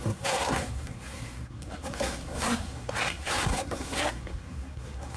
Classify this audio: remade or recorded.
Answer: remade